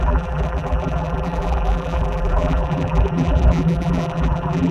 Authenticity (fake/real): fake